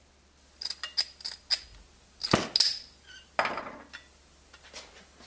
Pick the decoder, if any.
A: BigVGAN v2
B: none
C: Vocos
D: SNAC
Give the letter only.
B